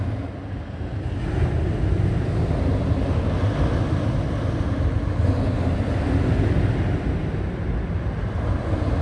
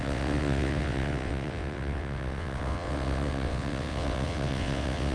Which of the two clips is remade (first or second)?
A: second